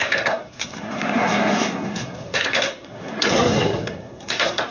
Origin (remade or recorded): remade